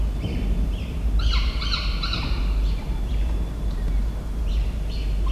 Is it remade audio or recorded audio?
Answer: remade